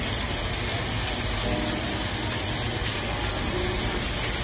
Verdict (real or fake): real